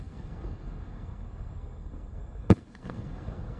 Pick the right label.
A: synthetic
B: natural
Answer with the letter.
A